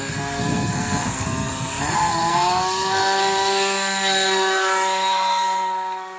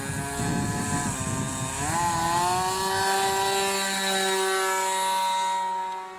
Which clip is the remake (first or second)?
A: first